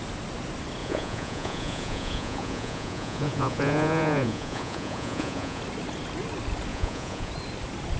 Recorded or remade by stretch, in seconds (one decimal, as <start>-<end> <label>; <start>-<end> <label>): 0.0-0.8 recorded; 0.8-5.6 remade; 5.6-6.7 recorded; 6.7-7.3 remade; 7.3-8.0 recorded